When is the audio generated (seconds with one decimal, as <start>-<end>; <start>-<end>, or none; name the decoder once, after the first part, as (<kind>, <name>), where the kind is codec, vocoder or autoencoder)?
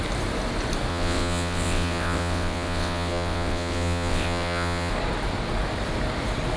0.9-4.9 (vocoder, WaveNeXt)